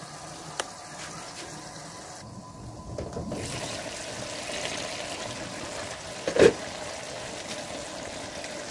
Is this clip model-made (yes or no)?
no